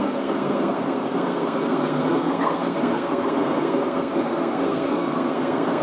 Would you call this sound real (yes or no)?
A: no